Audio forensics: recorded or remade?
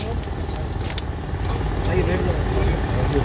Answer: recorded